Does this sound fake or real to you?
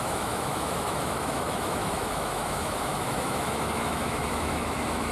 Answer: fake